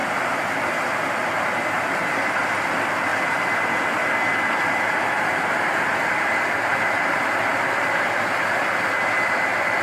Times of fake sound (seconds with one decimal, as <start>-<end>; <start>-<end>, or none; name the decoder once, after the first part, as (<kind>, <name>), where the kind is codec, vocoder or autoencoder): 1.9-3.1 (vocoder, BigVGAN v2); 4.8-9.8